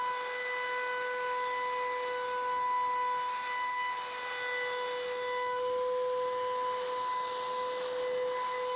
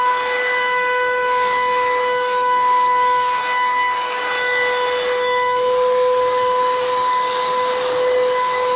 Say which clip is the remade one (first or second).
second